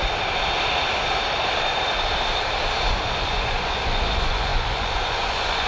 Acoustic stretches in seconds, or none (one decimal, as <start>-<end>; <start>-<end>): 0.0-3.2